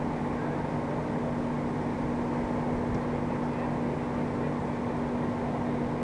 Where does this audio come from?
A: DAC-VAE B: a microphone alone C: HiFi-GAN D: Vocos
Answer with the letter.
B